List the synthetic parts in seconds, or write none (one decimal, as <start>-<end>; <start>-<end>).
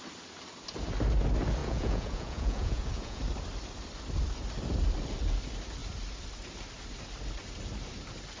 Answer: 1.6-3.2